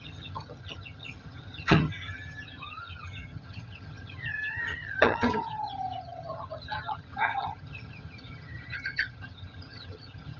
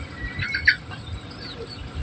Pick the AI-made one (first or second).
first